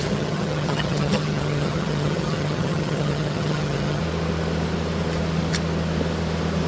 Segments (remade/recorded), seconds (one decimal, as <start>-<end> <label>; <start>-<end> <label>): 0.0-4.0 remade; 4.0-6.7 recorded